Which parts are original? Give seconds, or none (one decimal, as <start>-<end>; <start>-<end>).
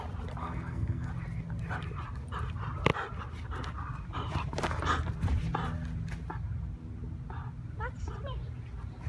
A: 0.0-0.4; 1.1-9.1